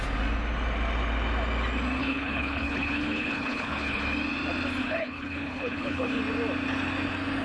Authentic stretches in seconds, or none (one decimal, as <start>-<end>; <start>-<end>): 0.0-2.0; 4.0-4.8; 6.2-7.4